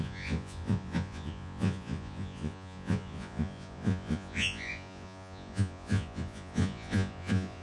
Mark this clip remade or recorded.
remade